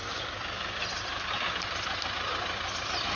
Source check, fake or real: real